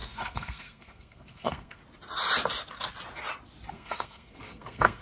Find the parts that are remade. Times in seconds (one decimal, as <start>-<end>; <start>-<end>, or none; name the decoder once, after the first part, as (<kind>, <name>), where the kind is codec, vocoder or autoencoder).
0.0-1.8 (codec, SNAC); 3.7-5.0